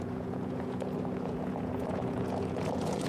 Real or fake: fake